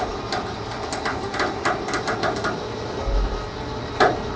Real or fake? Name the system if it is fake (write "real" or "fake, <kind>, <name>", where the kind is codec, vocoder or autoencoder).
real